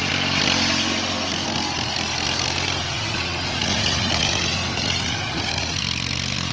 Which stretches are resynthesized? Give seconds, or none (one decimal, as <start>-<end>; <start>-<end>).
2.8-5.8